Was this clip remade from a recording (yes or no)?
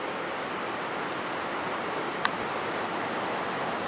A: no